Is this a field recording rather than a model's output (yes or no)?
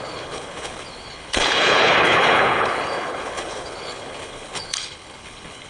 no